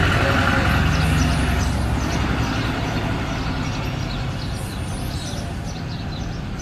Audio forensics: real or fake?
real